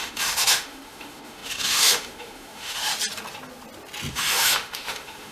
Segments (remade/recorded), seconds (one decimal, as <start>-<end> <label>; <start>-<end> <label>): 0.0-2.9 remade; 2.9-4.1 recorded; 4.1-5.3 remade